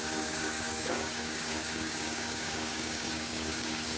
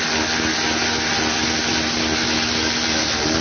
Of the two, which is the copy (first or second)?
first